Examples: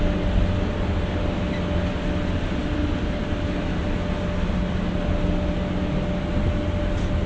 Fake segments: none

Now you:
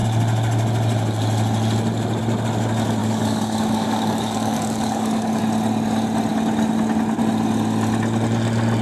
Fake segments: 3.0-5.4 (codec, DAC)